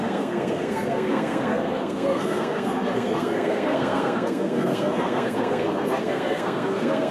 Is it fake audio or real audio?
fake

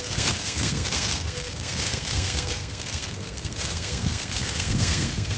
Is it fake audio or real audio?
fake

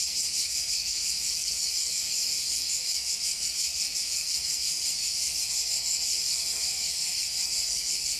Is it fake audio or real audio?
fake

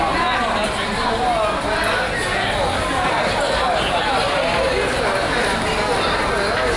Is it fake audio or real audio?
real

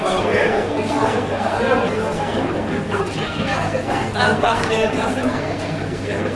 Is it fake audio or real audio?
fake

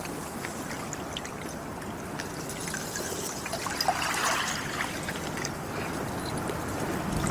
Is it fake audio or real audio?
real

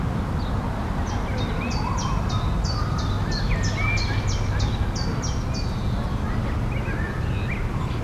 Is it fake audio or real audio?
real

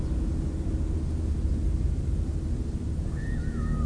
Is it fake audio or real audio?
real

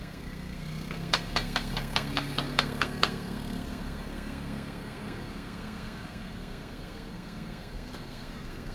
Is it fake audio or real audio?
fake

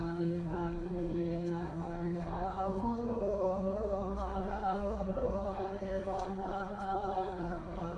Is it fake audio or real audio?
fake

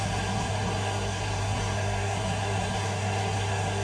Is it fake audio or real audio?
fake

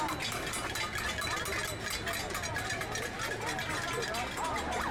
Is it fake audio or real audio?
real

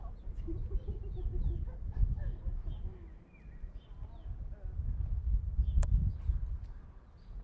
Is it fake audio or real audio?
real